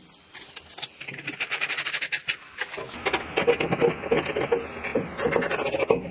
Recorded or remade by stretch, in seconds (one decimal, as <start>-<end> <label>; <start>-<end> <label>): 0.0-6.1 recorded